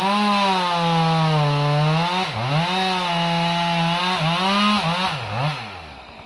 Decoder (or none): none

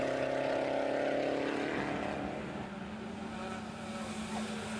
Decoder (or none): none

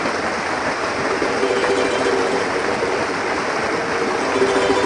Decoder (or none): none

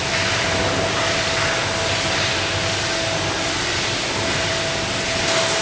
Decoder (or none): none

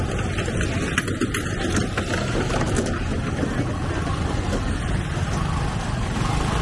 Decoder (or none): none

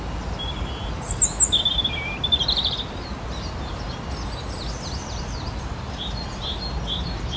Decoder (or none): none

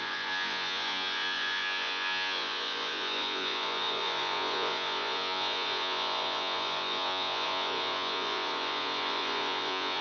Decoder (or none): vocoder, Vocos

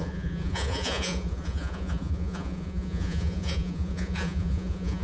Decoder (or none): vocoder, Vocos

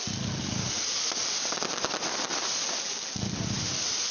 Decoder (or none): none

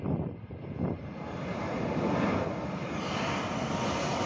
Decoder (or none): none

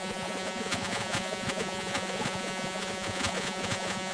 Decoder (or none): vocoder, Vocos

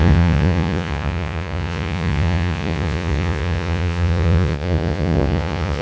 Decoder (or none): vocoder, Vocos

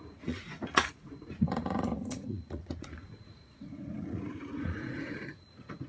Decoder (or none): vocoder, Vocos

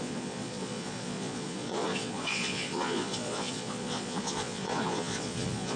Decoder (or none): vocoder, Vocos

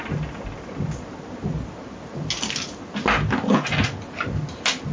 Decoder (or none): none